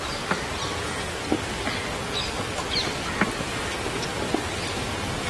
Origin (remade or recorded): recorded